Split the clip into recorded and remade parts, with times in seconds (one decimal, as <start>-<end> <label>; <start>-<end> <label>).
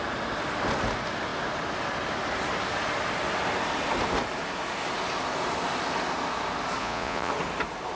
0.0-6.8 recorded; 6.8-7.3 remade; 7.3-8.0 recorded